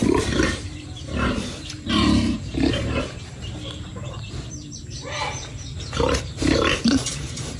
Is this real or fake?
fake